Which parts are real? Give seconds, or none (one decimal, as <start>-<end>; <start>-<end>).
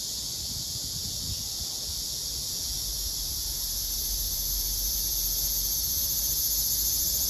0.0-2.8; 5.1-7.3